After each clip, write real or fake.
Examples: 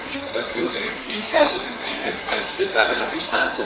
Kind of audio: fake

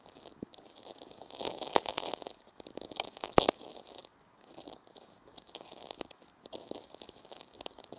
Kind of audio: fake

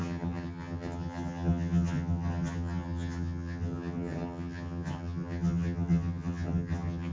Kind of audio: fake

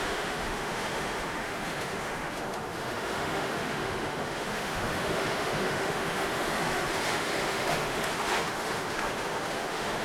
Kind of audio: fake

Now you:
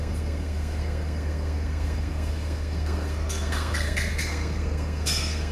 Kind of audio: fake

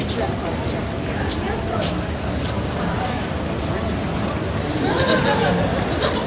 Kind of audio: fake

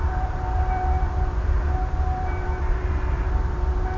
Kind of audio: fake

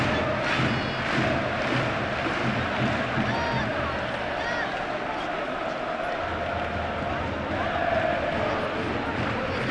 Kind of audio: real